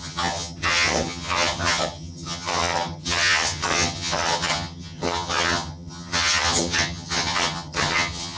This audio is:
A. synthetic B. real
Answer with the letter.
A